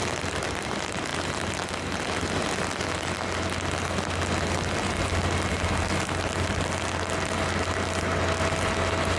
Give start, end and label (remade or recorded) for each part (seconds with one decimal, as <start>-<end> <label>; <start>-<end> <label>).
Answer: 0.0-9.2 recorded